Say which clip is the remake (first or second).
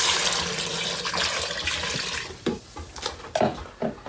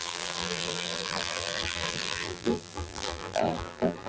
second